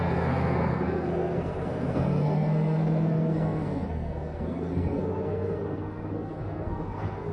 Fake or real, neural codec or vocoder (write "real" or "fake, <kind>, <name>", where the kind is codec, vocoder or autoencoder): fake, codec, SNAC